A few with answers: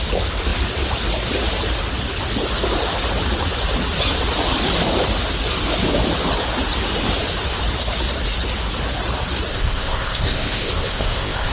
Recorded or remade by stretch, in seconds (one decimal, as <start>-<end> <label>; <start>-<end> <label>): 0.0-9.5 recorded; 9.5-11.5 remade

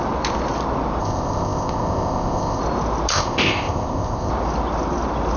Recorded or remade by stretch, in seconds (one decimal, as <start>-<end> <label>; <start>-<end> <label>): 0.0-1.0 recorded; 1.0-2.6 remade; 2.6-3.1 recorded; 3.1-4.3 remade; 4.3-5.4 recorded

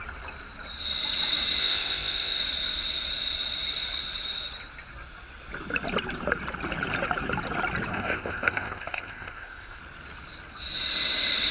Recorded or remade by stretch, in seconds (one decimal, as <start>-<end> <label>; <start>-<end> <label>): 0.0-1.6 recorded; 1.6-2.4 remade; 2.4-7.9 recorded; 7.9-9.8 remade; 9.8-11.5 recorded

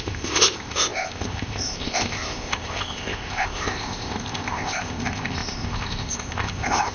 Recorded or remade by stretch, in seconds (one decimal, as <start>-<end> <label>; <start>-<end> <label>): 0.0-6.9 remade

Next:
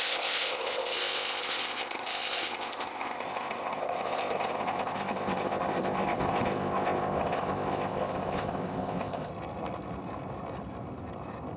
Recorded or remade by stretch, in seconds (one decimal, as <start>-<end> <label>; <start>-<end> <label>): 0.0-9.3 remade; 9.3-11.6 recorded